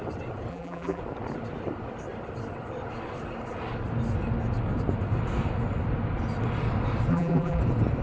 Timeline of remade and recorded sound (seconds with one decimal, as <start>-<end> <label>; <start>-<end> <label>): 0.0-0.5 recorded; 0.5-1.0 remade; 1.0-7.1 recorded; 7.1-7.6 remade; 7.6-8.0 recorded